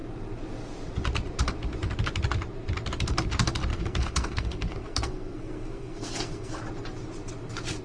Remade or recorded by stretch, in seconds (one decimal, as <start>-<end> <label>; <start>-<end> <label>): 0.0-3.7 recorded; 3.7-6.6 remade; 6.6-7.8 recorded

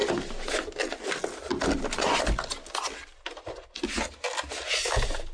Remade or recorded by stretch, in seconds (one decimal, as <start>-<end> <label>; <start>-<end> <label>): 0.0-5.3 recorded

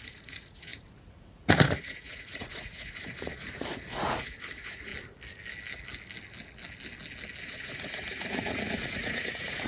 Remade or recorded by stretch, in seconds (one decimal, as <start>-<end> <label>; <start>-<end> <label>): 0.0-4.9 remade; 4.9-7.4 recorded; 7.4-9.7 remade